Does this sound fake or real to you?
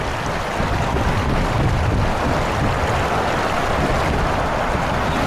real